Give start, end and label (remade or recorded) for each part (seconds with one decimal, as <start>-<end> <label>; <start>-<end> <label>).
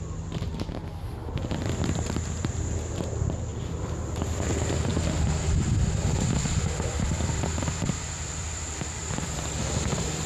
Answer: 0.0-0.5 remade; 0.5-1.3 recorded; 1.3-10.3 remade